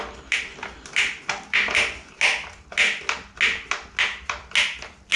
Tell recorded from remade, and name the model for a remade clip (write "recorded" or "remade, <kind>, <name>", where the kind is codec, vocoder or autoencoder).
recorded